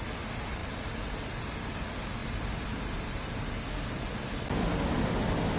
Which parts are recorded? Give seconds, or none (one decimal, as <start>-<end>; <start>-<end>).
0.0-0.6; 1.8-2.2; 3.6-5.6